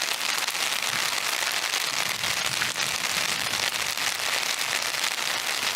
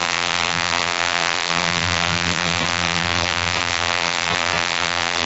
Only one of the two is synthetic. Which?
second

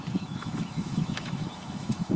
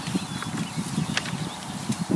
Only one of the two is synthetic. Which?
first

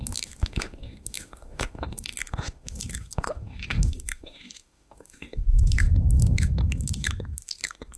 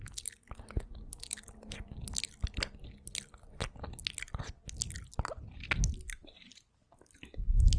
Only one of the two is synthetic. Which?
first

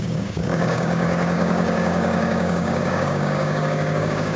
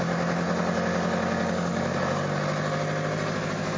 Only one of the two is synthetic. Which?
first